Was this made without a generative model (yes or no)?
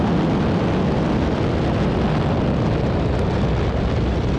yes